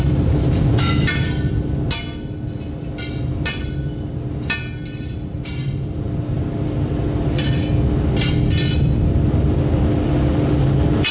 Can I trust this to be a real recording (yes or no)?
yes